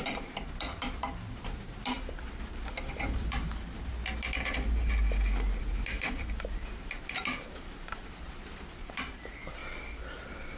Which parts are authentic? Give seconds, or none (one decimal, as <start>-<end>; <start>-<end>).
3.9-5.6; 9.6-10.6